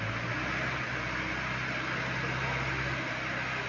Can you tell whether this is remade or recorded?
recorded